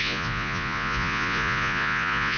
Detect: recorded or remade remade